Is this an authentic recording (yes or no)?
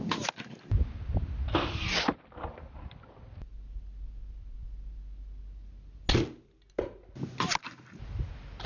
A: yes